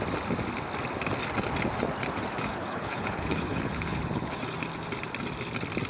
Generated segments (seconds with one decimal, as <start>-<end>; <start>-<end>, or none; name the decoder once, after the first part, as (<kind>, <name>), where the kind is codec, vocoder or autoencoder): 2.5-4.4 (codec, HILCodec)